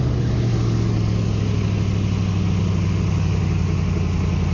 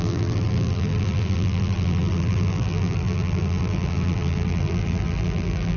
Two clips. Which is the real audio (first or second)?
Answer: first